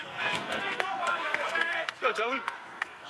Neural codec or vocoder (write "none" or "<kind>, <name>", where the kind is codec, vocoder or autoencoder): codec, SNAC